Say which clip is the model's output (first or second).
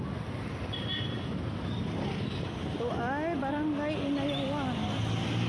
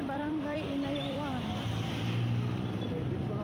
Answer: second